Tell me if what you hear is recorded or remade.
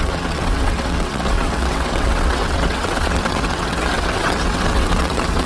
remade